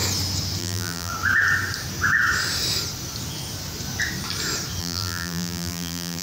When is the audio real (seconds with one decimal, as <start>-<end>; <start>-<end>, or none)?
0.0-0.6; 1.1-4.8